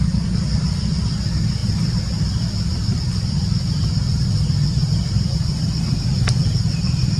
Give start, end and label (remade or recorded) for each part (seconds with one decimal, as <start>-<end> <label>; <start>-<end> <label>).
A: 0.0-7.2 recorded